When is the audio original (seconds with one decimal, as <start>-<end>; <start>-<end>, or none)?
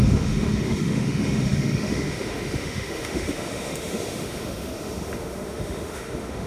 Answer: none